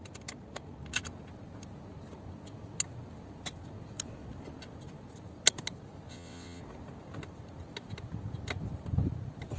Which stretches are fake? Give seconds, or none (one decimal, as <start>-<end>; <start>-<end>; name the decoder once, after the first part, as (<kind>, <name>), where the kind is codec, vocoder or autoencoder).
6.1-6.6 (vocoder, WaveNeXt)